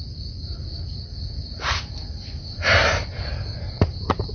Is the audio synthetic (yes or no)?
yes